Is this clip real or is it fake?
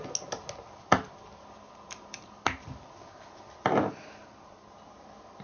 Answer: real